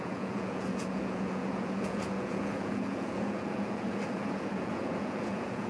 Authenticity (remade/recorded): remade